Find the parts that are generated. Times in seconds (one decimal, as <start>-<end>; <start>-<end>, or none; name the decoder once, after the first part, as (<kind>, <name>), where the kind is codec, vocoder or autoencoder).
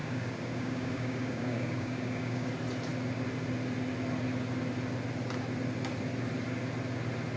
0.0-2.5 (codec, DAC)